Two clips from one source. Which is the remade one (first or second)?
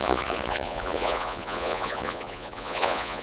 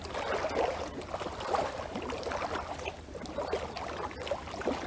first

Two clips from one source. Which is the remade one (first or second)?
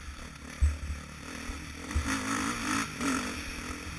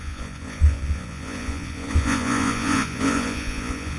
second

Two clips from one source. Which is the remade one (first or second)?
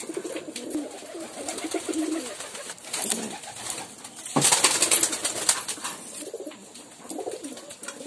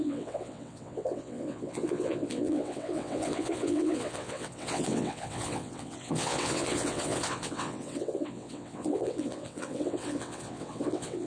second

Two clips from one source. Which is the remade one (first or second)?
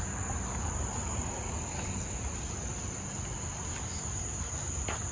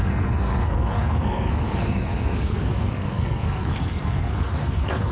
second